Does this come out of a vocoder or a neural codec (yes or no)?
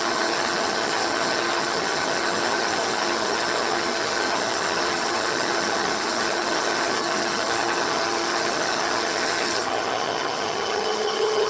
yes